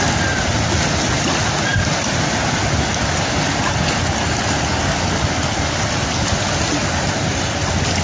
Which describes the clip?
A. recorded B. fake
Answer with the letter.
A